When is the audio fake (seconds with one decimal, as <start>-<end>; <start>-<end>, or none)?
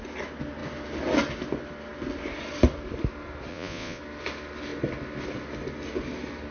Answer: 3.5-4.0